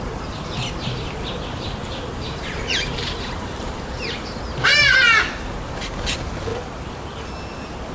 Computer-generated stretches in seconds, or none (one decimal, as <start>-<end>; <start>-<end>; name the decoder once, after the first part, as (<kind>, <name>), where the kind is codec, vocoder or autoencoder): 1.8-4.4 (vocoder, BigVGAN v2)